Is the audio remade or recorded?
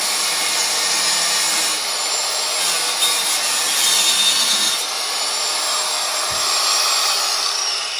recorded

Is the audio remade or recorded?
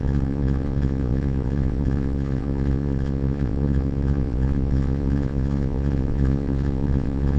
remade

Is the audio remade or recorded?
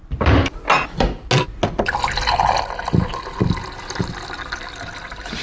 recorded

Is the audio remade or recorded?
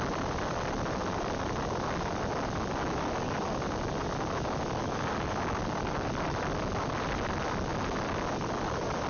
recorded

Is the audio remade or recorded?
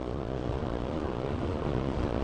remade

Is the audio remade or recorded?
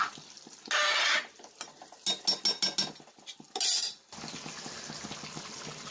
recorded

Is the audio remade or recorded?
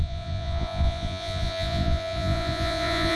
remade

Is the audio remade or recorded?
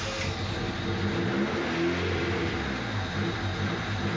recorded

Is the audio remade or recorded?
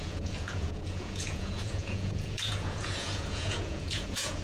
remade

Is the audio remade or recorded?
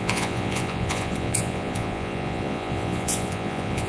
remade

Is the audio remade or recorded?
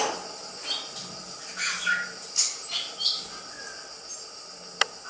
recorded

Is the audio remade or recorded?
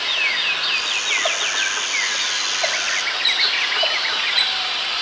recorded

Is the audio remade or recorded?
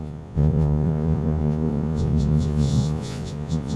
remade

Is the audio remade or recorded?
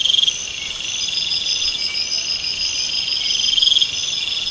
recorded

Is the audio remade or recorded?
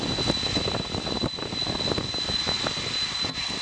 recorded